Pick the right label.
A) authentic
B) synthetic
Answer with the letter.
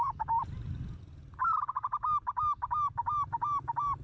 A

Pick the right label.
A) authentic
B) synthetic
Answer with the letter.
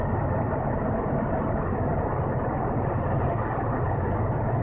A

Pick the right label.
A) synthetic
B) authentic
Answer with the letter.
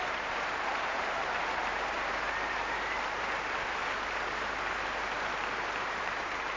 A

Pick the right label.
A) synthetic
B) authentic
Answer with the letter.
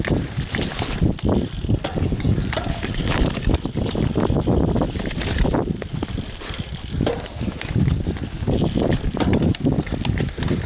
B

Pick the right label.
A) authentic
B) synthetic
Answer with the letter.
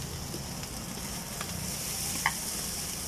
A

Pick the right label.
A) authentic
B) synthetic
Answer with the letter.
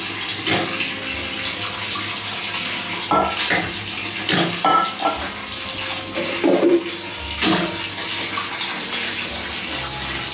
A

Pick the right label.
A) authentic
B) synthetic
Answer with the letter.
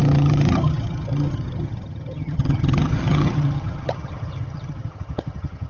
B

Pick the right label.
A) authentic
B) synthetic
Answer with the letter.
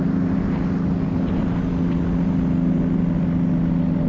A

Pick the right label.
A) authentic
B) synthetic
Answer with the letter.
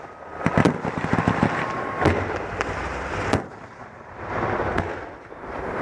B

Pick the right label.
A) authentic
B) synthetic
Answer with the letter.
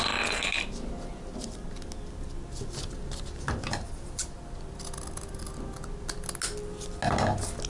A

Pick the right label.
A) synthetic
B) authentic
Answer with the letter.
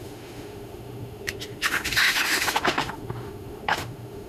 A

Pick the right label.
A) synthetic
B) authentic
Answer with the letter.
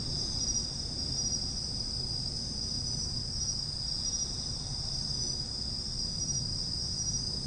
B